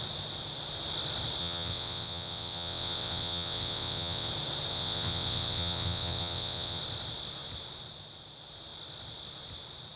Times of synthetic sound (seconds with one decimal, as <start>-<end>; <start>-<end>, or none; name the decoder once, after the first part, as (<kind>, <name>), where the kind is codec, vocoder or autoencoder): 1.4-4.3 (vocoder, WaveNeXt); 4.7-6.8